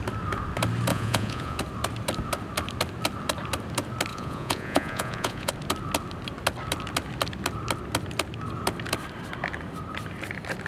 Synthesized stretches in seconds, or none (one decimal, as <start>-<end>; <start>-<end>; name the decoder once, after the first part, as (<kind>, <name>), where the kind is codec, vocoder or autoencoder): 0.9-1.6 (vocoder, Vocos); 4.1-5.5